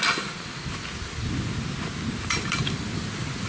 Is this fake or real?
real